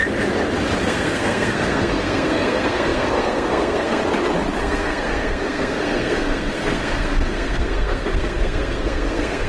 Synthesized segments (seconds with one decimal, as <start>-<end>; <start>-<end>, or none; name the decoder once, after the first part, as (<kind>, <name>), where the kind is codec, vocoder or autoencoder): 0.8-4.0 (codec, SNAC); 4.6-9.5